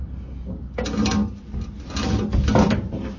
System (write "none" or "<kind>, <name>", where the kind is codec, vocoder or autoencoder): none